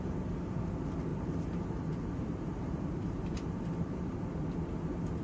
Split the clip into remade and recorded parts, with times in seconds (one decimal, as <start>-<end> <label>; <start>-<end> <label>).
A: 0.0-1.1 recorded; 1.1-4.2 remade; 4.2-5.2 recorded